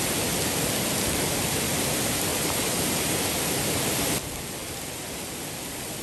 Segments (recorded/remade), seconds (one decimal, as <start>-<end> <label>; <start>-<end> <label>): 0.0-2.3 recorded; 2.3-3.1 remade; 3.1-6.0 recorded

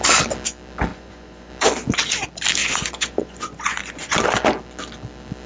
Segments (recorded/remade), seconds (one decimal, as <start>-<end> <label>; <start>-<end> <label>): 0.0-0.9 recorded; 0.9-1.5 remade; 1.5-2.6 recorded; 2.6-4.2 remade; 4.2-5.5 recorded